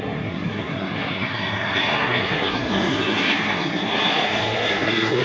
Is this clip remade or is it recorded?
remade